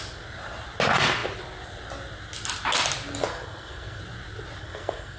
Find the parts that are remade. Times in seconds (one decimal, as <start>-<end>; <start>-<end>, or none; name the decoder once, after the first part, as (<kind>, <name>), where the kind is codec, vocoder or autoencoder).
3.3-4.0 (codec, SNAC); 4.6-5.2